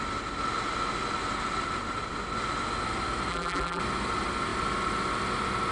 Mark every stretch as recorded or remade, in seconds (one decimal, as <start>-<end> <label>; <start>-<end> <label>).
0.0-3.3 recorded; 3.3-3.8 remade; 3.8-5.7 recorded